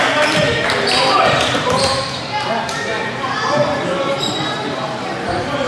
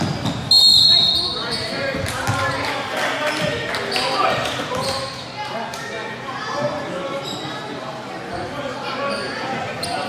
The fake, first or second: first